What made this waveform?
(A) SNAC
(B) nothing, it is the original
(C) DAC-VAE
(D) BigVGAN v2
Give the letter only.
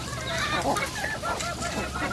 B